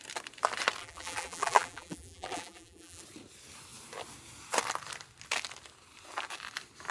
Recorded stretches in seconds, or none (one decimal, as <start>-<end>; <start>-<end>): 0.0-0.8; 3.0-6.9